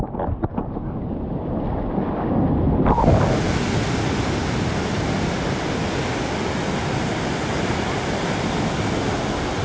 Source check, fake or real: real